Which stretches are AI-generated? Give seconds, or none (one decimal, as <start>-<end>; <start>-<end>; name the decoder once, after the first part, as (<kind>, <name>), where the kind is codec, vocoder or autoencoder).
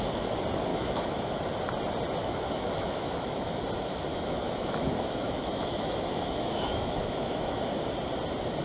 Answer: 0.7-1.4 (autoencoder, DAC-VAE); 2.2-3.6; 4.1-7.7